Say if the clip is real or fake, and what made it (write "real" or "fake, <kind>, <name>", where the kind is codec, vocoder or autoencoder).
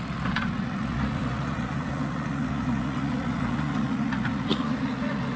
fake, vocoder, Vocos